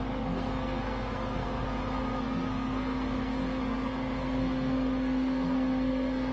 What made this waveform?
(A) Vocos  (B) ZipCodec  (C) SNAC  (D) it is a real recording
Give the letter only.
C